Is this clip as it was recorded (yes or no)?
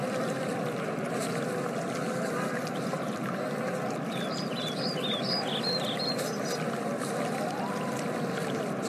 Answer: yes